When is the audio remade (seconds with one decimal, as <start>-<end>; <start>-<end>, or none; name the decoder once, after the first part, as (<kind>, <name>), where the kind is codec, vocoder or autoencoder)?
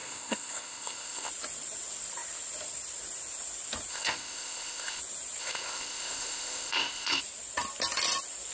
0.0-1.3 (codec, ZipCodec); 3.9-5.0; 5.4-7.2